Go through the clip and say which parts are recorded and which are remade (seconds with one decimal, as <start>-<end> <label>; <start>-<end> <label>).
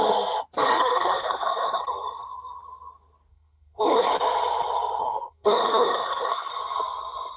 0.0-0.7 recorded; 0.7-1.8 remade; 1.8-3.3 recorded; 3.3-4.1 remade; 4.1-5.0 recorded; 5.0-6.5 remade; 6.5-7.4 recorded